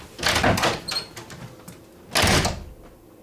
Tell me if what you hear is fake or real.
real